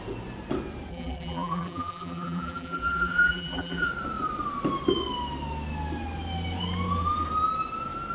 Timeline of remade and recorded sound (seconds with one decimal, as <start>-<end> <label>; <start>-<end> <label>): 0.0-0.9 recorded; 0.9-3.9 remade; 3.9-8.1 recorded